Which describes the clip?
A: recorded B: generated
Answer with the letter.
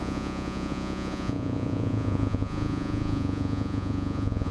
B